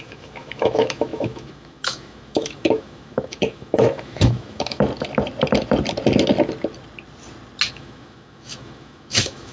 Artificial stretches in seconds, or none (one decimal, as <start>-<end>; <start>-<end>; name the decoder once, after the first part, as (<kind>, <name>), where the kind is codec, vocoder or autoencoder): 0.0-4.9 (autoencoder, DAC-VAE); 7.7-9.5